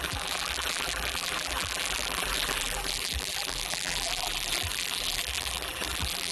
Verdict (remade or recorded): remade